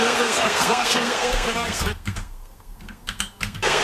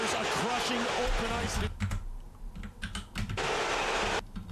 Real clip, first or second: second